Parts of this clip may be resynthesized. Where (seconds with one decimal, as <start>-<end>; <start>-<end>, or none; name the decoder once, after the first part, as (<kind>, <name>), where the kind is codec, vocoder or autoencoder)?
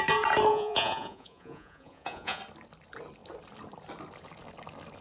0.5-2.4 (vocoder, Vocos)